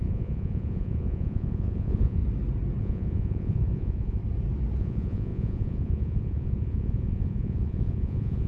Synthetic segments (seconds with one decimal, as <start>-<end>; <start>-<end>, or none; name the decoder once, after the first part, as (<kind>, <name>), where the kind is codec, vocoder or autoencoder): 0.0-2.2 (vocoder, Vocos); 2.8-4.2; 4.8-8.5